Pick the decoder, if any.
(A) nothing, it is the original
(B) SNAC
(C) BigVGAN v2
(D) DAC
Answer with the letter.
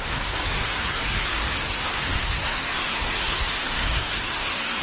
B